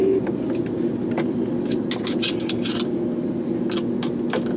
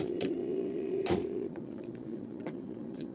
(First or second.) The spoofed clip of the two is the second